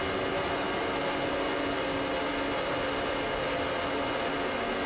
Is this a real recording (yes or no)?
yes